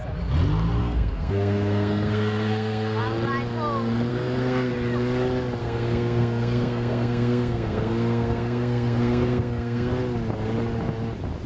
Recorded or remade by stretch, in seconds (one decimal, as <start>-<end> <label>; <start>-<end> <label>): 0.0-0.8 recorded; 0.8-3.0 remade; 3.0-4.1 recorded; 4.1-4.7 remade; 4.7-5.6 recorded; 5.6-9.9 remade; 9.9-11.5 recorded